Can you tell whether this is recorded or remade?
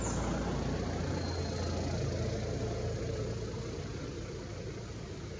recorded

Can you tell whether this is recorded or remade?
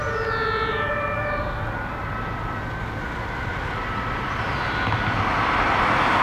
recorded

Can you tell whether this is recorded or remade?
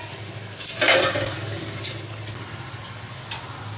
recorded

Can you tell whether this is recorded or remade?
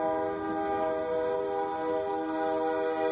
recorded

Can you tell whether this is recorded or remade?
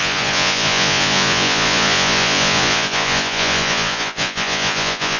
remade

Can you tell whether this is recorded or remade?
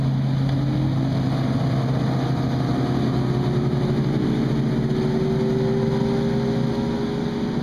recorded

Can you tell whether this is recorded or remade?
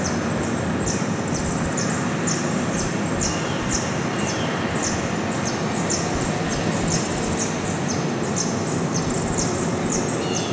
recorded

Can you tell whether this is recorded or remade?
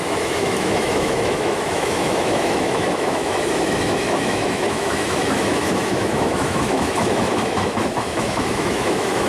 remade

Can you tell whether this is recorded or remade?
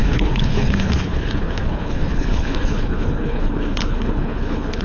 remade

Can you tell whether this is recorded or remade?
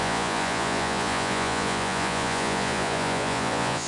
remade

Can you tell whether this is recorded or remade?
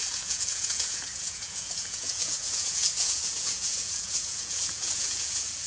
remade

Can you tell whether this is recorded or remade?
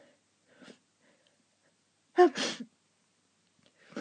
recorded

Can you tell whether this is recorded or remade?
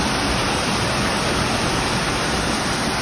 recorded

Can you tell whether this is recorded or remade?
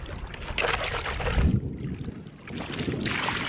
recorded